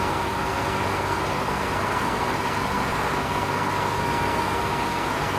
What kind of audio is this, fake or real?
fake